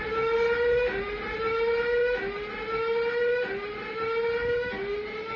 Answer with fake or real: real